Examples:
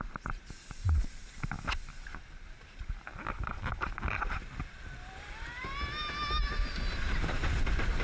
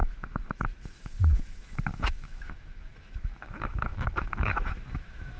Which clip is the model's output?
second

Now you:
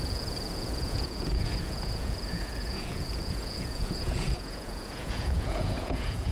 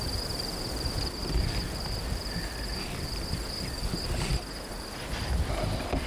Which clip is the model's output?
first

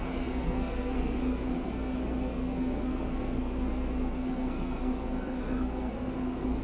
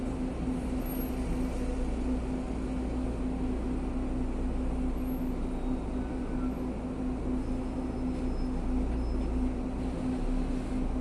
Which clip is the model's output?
first